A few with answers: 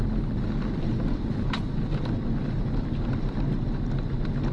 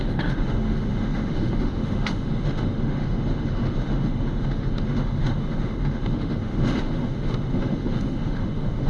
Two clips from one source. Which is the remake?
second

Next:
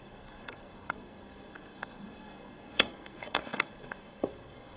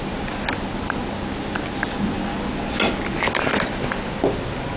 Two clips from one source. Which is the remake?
first